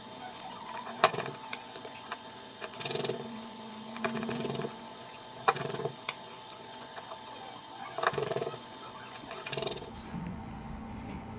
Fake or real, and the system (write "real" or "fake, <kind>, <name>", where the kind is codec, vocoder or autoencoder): fake, vocoder, Vocos